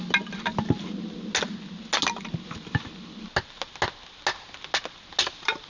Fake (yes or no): no